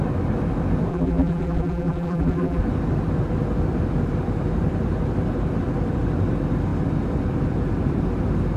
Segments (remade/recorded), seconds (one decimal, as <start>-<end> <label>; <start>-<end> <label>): 0.0-0.9 recorded; 0.9-2.6 remade; 2.6-8.6 recorded